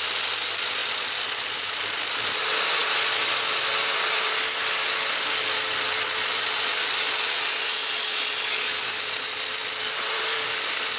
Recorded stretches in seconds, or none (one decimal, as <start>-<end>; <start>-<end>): 0.0-11.0